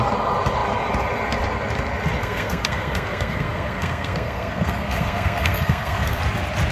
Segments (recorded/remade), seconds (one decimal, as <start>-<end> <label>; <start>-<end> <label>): 0.0-2.2 recorded; 2.2-6.2 remade; 6.2-6.7 recorded